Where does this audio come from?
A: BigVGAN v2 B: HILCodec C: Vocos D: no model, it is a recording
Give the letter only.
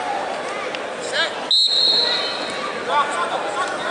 D